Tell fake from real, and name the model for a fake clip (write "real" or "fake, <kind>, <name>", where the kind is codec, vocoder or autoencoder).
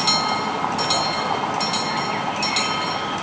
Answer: real